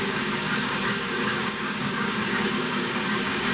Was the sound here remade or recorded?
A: remade